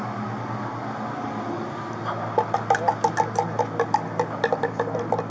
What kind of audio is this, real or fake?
real